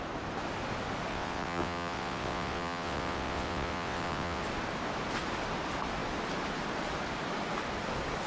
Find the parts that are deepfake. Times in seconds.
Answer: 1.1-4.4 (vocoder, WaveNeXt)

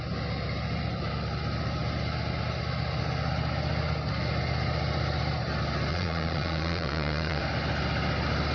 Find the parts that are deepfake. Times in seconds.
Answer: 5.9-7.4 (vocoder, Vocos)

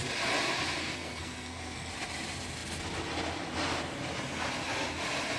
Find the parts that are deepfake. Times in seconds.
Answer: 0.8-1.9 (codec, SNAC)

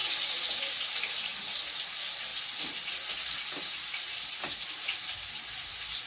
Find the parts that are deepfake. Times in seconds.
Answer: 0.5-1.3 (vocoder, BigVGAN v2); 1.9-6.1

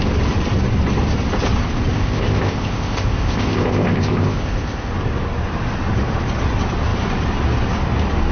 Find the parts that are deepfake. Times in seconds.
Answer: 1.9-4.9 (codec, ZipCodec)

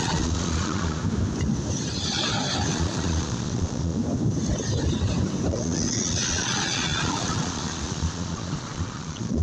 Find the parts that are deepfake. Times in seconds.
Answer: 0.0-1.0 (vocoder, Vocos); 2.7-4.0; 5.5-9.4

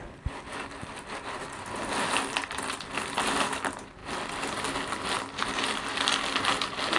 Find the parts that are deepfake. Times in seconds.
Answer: none

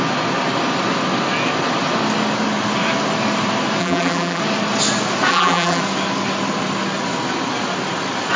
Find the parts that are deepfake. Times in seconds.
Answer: 3.8-4.4 (vocoder, BigVGAN v2); 5.3-5.8